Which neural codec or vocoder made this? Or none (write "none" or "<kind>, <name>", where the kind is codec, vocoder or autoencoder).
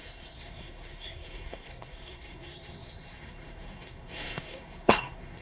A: codec, SNAC